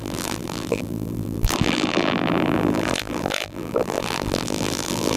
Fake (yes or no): yes